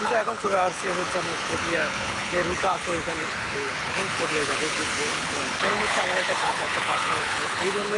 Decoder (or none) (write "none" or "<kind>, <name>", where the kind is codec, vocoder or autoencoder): codec, HILCodec